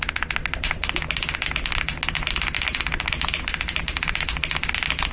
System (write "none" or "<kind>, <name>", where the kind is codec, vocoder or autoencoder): vocoder, BigVGAN v2